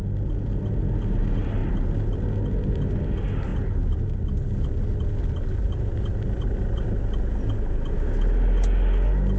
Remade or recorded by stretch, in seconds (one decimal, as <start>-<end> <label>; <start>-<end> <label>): 0.0-9.4 recorded